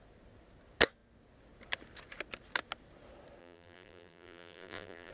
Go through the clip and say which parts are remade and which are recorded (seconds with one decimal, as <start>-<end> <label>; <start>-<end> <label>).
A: 0.0-3.4 recorded; 3.4-5.1 remade

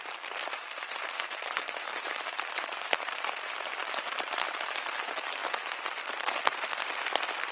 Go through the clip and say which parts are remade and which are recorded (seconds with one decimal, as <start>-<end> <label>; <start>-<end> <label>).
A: 0.0-0.7 recorded; 0.7-3.1 remade; 3.1-3.8 recorded; 3.8-5.0 remade; 5.0-7.5 recorded

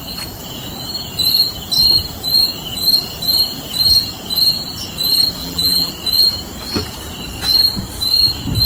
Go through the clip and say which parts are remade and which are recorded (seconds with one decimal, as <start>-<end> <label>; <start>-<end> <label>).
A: 0.0-5.4 recorded; 5.4-5.9 remade; 5.9-8.7 recorded

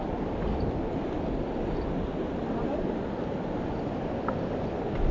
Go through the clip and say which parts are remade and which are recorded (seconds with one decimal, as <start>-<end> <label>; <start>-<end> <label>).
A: 0.0-1.3 remade; 1.3-5.1 recorded

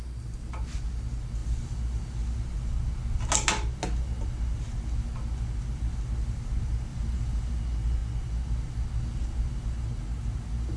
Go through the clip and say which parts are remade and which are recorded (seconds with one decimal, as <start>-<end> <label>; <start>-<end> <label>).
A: 0.0-6.9 recorded; 6.9-7.6 remade; 7.6-10.8 recorded

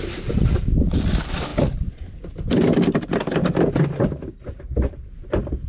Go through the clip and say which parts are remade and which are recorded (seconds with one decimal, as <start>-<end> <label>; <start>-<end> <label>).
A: 0.0-1.5 remade; 1.5-4.9 recorded; 4.9-5.7 remade

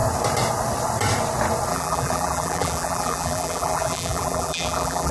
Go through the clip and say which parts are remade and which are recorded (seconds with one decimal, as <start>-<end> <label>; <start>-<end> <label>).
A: 0.0-1.7 recorded; 1.7-5.1 remade